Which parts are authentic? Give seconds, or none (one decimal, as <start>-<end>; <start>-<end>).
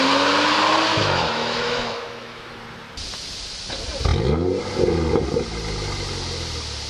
0.0-0.9; 2.5-6.9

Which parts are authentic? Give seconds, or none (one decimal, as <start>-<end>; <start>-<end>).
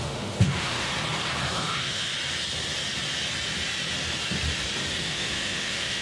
0.9-1.5; 2.1-5.0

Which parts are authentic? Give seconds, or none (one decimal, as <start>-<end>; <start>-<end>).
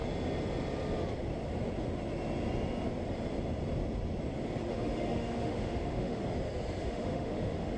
0.0-4.7; 6.2-6.8